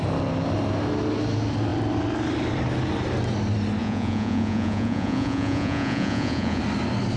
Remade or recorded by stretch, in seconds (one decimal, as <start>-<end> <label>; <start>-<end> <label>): 0.0-3.8 recorded; 3.8-6.6 remade; 6.6-7.2 recorded

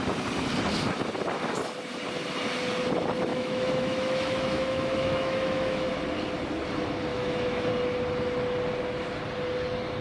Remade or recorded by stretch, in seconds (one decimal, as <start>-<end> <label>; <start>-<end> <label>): 0.0-3.3 recorded; 3.3-5.9 remade; 5.9-7.1 recorded; 7.1-7.7 remade; 7.7-10.0 recorded

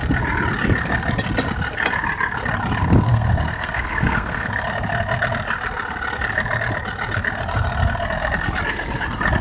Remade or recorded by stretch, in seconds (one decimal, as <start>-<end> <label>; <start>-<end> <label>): 0.0-2.8 recorded; 2.8-4.5 remade; 4.5-9.4 recorded